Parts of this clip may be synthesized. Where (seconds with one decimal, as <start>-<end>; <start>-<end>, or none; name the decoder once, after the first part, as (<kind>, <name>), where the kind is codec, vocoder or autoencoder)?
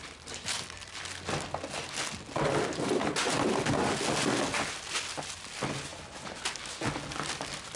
none